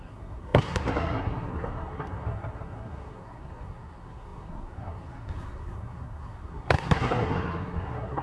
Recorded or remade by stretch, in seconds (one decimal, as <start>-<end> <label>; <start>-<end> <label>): 0.0-8.2 remade